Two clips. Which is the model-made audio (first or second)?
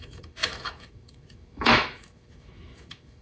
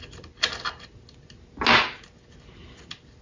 first